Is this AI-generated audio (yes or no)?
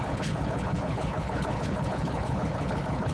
yes